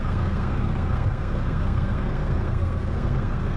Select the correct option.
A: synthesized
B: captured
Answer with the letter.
A